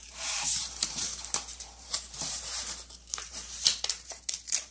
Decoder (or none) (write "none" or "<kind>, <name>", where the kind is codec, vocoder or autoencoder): vocoder, BigVGAN v2